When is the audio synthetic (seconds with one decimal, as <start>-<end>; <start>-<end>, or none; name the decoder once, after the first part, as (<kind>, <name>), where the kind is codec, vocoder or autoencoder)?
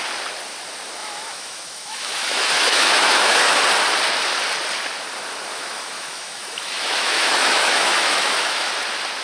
1.0-3.6 (autoencoder, DAC-VAE); 5.5-8.7